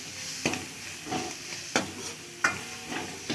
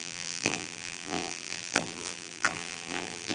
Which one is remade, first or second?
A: second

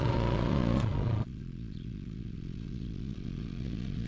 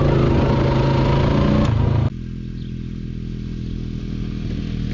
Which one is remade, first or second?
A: first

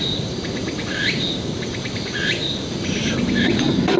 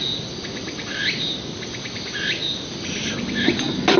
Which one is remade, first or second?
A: first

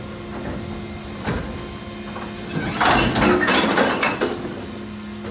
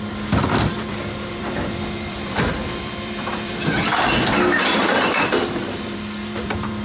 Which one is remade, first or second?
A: second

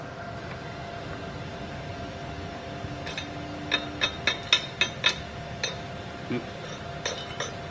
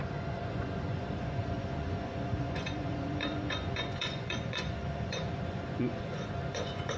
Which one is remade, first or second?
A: second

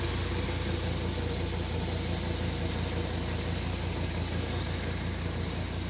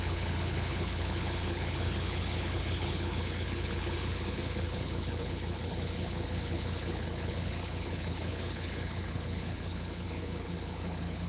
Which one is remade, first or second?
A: second